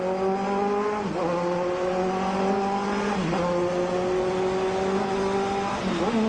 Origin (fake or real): real